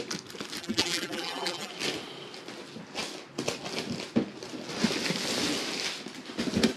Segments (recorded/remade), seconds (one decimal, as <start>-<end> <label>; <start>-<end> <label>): 0.0-0.6 recorded; 0.6-1.7 remade; 1.7-6.8 recorded